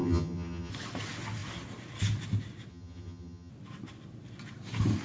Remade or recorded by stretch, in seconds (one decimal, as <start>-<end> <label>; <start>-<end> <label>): 0.0-0.7 remade; 0.7-2.7 recorded; 2.7-3.5 remade; 3.5-5.0 recorded